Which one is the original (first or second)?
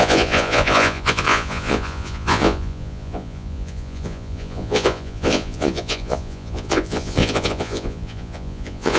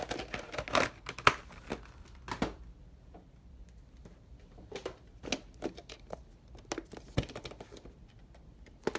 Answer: second